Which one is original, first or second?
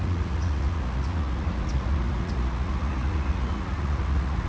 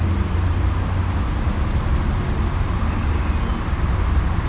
second